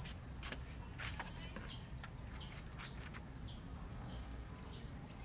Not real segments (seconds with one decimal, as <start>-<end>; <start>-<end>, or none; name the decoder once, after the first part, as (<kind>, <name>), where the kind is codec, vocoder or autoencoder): 3.9-4.5 (codec, SNAC)